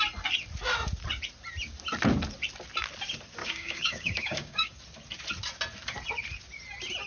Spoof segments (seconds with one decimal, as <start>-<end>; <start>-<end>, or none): 3.4-4.8